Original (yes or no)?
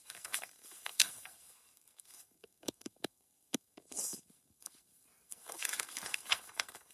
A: no